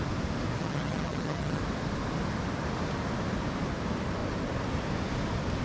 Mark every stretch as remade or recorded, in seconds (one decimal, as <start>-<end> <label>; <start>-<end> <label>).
0.0-0.6 recorded; 0.6-1.6 remade; 1.6-5.6 recorded